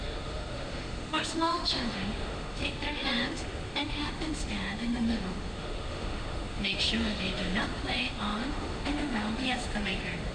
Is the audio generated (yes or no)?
yes